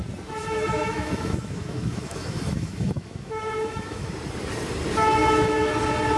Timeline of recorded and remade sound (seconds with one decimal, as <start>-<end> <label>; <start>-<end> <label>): 0.0-0.4 recorded; 0.4-4.1 remade; 4.1-5.2 recorded; 5.2-5.7 remade; 5.7-6.2 recorded